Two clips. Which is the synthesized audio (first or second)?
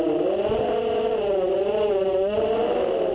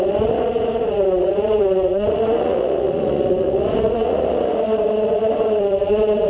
second